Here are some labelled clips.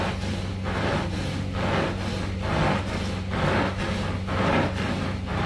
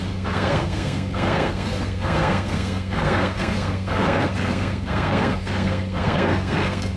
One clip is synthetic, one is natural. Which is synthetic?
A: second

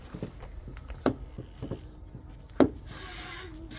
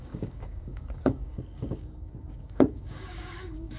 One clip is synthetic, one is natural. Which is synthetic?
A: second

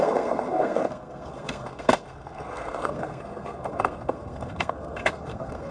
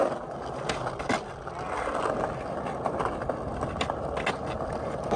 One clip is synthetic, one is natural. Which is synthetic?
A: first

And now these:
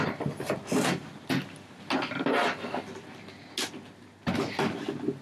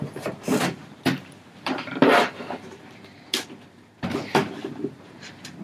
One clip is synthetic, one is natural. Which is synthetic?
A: second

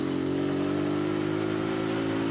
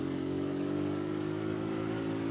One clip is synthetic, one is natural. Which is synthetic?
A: second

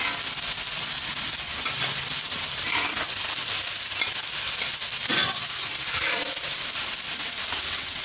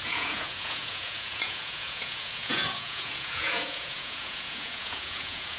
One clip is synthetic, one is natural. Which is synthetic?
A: second